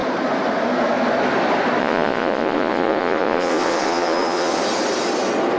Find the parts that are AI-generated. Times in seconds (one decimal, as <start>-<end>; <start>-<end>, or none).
1.8-4.6